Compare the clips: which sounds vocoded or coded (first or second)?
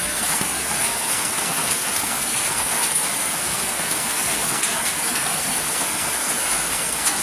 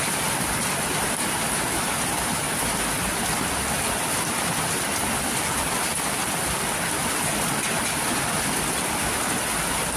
first